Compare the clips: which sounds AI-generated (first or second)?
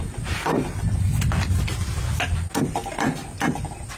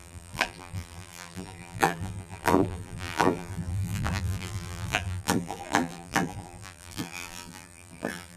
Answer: second